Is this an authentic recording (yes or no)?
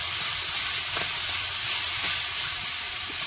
yes